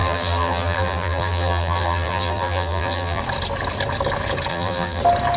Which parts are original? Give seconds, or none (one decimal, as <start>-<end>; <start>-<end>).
3.2-4.5; 5.0-5.4